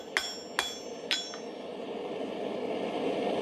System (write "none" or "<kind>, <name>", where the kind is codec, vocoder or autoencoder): none